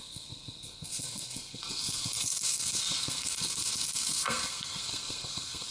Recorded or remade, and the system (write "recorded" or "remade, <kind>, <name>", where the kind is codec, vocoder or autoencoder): remade, codec, SNAC